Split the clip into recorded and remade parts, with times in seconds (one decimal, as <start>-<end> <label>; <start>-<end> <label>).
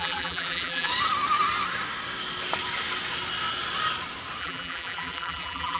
0.0-0.9 remade; 0.9-4.4 recorded; 4.4-5.8 remade